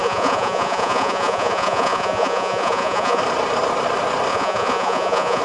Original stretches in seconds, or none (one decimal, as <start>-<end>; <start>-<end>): 3.2-4.3